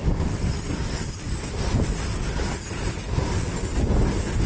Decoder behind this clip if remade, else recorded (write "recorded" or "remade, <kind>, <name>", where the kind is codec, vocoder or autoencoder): recorded